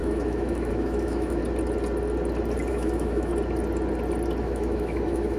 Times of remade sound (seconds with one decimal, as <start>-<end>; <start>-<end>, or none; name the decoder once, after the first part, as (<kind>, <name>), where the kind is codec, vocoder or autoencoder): 0.0-1.4 (autoencoder, DAC-VAE); 2.7-3.3; 4.4-5.4